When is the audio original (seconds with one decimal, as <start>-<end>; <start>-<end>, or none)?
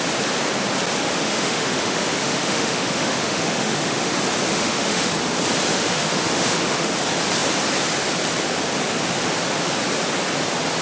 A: 0.0-1.1; 4.1-4.5; 5.1-5.7; 6.9-10.8